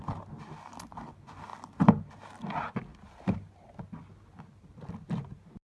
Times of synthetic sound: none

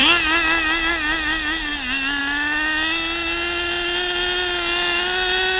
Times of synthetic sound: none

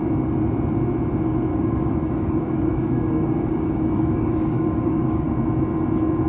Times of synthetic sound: 1.5-5.3 (codec, DAC)

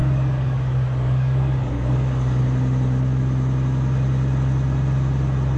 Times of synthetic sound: 0.0-2.4 (codec, DAC)

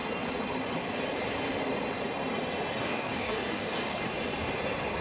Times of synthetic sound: 2.9-4.0 (codec, DAC)

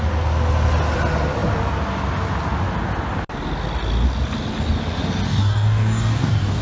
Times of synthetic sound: 5.3-6.6 (codec, DAC)

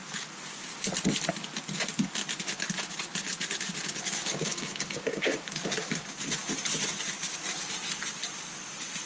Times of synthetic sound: 4.2-5.5 (codec, DAC)